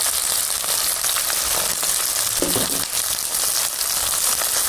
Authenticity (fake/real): real